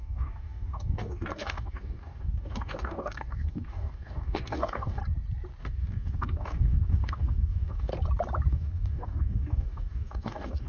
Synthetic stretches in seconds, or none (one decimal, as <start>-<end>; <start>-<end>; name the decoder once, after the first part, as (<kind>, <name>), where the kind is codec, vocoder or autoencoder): 0.0-5.0 (codec, DAC); 5.6-7.9; 8.5-10.7